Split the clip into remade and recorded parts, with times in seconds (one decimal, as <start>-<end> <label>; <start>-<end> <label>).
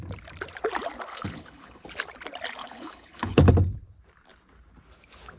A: 0.0-1.1 recorded; 1.1-1.9 remade; 1.9-2.6 recorded; 2.6-3.5 remade; 3.5-5.4 recorded